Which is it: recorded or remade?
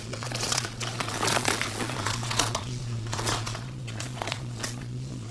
remade